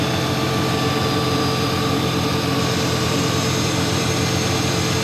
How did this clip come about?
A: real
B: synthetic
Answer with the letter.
B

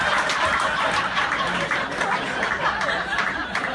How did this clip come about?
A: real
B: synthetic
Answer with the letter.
A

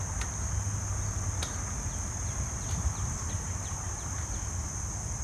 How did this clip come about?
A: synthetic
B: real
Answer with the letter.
B